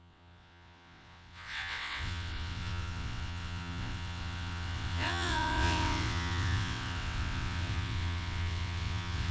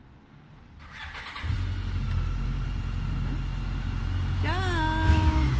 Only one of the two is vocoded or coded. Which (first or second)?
first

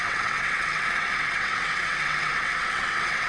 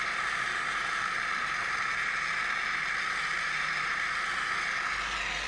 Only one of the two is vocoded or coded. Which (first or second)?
first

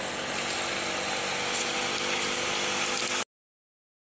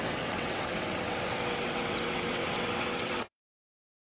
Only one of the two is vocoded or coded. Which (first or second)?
second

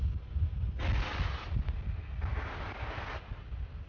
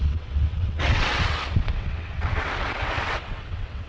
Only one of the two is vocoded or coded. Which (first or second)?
second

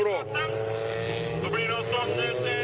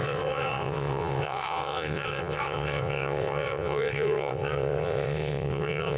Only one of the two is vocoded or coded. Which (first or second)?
second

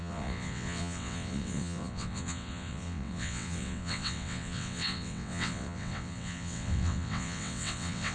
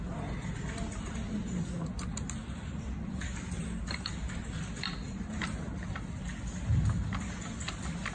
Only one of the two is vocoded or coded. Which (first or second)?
first